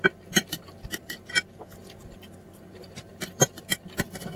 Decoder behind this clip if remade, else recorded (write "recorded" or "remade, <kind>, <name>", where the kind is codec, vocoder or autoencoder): remade, vocoder, BigVGAN v2